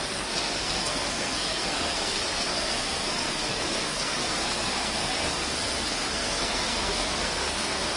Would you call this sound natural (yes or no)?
no